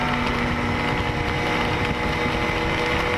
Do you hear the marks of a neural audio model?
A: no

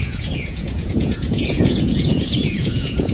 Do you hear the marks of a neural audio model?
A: yes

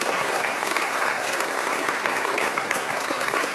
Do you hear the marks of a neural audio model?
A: yes